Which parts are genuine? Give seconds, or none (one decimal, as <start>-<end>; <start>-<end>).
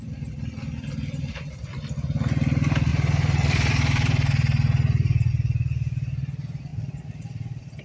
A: 0.0-2.9; 5.3-7.8